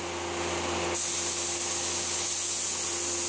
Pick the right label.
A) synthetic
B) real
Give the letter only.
B